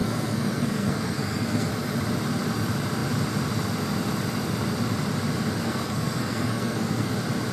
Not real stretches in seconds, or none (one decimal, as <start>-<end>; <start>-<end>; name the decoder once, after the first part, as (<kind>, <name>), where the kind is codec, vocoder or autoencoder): 0.0-1.7 (codec, SNAC); 5.6-7.1